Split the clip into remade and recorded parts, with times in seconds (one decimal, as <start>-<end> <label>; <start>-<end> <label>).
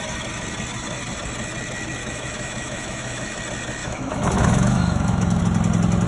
0.0-2.0 recorded; 2.0-3.4 remade; 3.4-3.8 recorded; 3.8-5.4 remade; 5.4-6.1 recorded